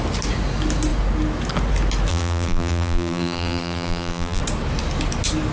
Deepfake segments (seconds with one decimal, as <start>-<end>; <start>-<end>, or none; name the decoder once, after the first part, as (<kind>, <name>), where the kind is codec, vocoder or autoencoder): 2.1-4.4 (vocoder, BigVGAN v2)